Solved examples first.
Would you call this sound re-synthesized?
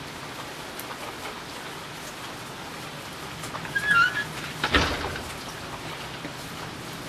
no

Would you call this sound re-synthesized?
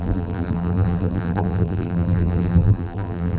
yes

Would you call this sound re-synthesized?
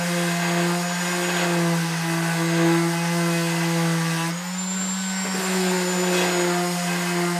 no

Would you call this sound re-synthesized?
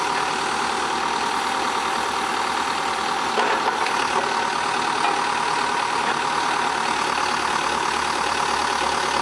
no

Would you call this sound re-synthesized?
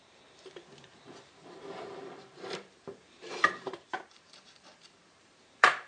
yes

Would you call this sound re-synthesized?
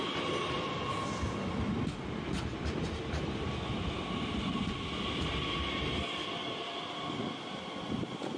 no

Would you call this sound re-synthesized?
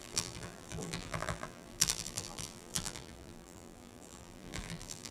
yes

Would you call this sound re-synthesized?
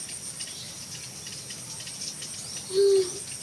no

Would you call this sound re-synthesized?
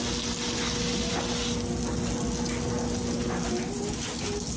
no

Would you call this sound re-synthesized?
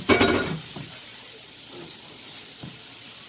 yes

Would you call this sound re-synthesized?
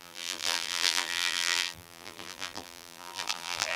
yes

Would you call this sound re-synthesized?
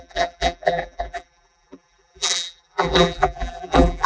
yes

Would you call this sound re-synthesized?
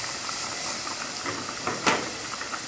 yes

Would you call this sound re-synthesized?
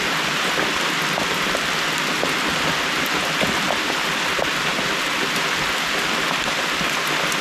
no